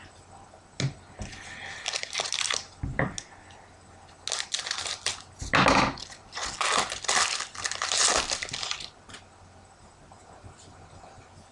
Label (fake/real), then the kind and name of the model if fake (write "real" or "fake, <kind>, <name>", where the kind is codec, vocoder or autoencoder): real